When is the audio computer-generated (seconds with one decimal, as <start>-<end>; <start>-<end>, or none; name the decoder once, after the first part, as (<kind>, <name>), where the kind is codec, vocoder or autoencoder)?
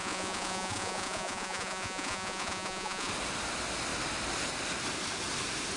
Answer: 0.0-3.1 (vocoder, Vocos)